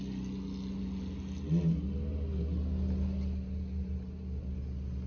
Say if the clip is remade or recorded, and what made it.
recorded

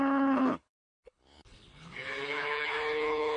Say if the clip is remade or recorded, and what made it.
remade, codec, HILCodec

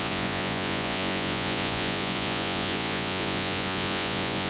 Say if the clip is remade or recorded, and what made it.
remade, vocoder, Vocos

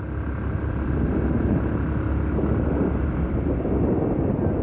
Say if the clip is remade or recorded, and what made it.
recorded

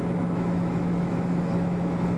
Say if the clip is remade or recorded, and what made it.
remade, autoencoder, DAC-VAE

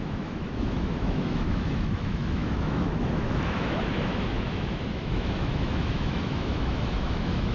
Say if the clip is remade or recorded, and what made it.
remade, autoencoder, DAC-VAE